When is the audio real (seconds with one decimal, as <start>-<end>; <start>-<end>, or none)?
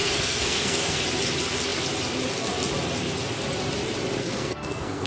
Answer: 1.0-4.2